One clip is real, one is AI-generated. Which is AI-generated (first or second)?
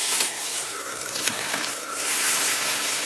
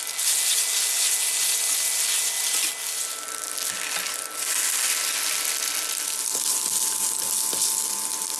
first